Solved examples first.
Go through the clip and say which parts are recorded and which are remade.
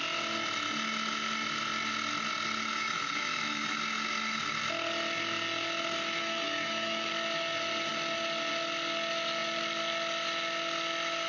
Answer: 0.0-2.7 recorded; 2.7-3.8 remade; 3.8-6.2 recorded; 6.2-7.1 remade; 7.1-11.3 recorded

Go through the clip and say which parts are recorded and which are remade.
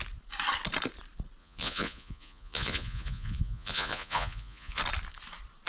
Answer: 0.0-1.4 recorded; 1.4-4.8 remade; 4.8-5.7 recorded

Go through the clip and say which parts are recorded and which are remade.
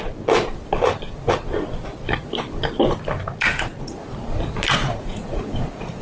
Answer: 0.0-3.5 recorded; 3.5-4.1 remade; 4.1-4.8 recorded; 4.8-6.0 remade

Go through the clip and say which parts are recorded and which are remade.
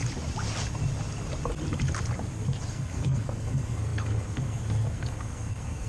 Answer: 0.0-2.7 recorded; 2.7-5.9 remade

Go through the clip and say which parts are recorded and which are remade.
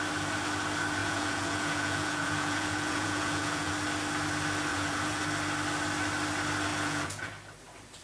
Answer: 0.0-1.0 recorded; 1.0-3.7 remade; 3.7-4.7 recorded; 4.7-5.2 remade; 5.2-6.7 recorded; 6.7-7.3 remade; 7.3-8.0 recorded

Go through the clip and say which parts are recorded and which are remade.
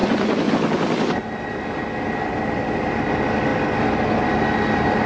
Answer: 0.0-0.5 remade; 0.5-5.1 recorded